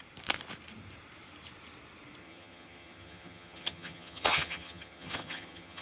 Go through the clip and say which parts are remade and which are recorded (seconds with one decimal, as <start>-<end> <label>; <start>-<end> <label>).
0.0-2.2 recorded; 2.2-5.8 remade